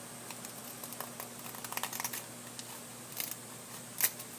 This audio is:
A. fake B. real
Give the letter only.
B